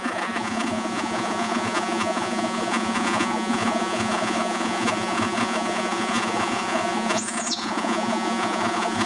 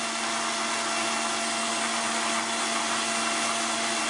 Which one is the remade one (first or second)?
first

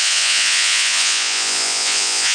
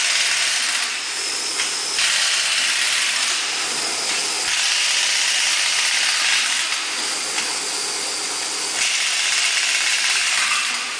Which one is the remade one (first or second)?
first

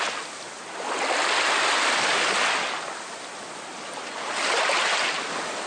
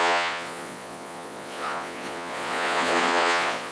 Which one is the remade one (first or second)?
second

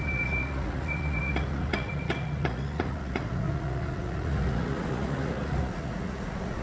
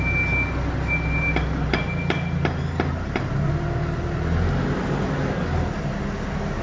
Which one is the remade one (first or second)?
first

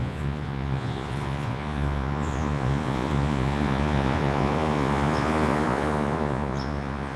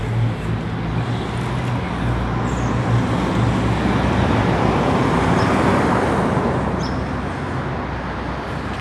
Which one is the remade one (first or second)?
first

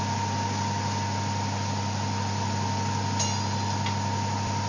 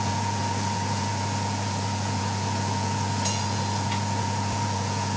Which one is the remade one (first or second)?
second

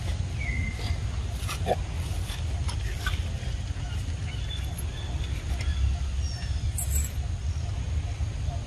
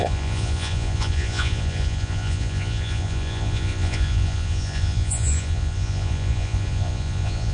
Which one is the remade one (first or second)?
second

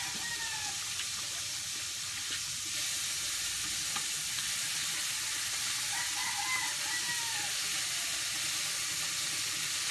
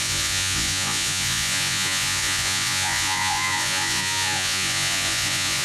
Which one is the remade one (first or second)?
second